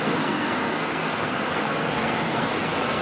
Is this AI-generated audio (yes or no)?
yes